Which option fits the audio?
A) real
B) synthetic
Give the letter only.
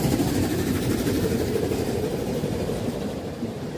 B